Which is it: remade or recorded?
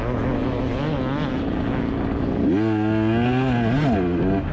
recorded